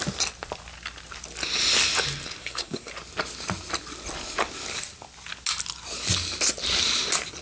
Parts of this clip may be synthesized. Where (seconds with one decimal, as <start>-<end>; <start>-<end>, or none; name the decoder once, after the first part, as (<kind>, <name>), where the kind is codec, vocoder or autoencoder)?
2.4-2.9 (codec, SNAC)